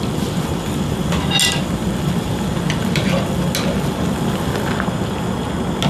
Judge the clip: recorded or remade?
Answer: recorded